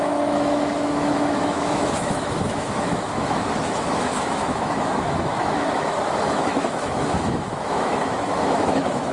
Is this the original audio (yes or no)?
no